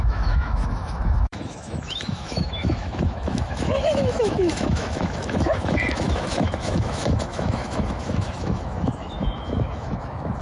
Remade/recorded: remade